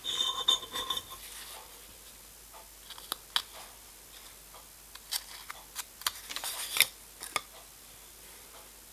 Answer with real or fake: real